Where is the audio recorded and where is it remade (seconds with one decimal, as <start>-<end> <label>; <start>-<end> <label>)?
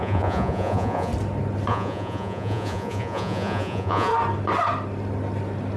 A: 0.0-1.1 remade; 1.1-1.7 recorded; 1.7-4.1 remade; 4.1-5.8 recorded